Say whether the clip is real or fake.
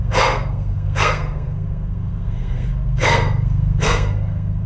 fake